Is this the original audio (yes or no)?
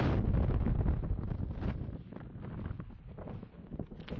yes